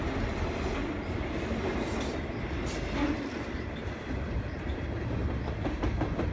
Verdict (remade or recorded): recorded